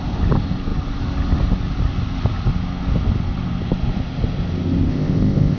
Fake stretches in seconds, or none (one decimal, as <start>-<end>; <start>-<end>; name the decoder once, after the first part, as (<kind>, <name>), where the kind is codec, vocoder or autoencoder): 4.9-5.6 (codec, ZipCodec)